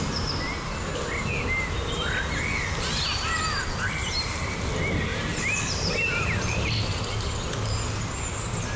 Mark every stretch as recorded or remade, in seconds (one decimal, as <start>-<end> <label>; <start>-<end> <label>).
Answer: 0.0-4.0 recorded; 4.0-4.6 remade; 4.6-5.1 recorded; 5.1-7.1 remade; 7.1-8.8 recorded